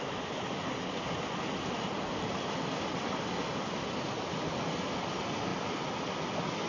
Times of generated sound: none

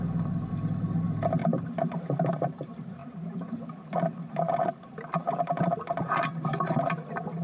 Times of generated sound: 3.0-3.6 (vocoder, BigVGAN v2)

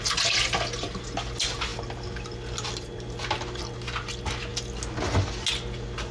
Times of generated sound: none

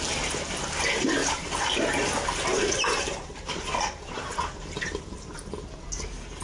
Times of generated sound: 1.2-5.0 (vocoder, BigVGAN v2)

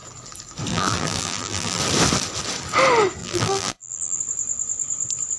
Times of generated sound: 0.7-1.8 (vocoder, BigVGAN v2); 3.2-4.2

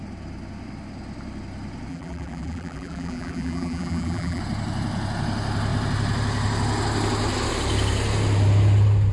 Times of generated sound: 1.9-4.4 (vocoder, BigVGAN v2)

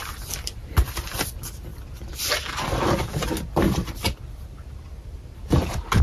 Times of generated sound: 0.0-1.7 (vocoder, BigVGAN v2); 2.7-3.2; 5.4-6.0

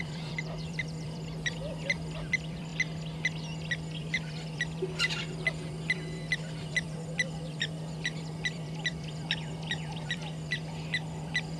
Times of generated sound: 0.0-2.7 (vocoder, BigVGAN v2); 4.0-11.6